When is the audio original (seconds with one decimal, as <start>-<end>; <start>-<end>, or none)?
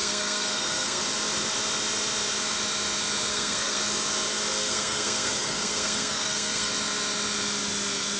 1.0-3.3; 3.8-4.6; 6.7-8.2